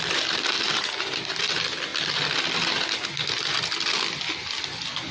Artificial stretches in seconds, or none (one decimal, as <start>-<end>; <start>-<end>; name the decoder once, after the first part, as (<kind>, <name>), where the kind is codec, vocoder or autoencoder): none